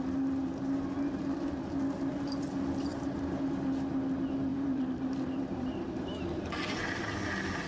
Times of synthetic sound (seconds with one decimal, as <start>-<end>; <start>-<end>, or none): 0.4-1.2; 2.9-3.5; 4.5-6.4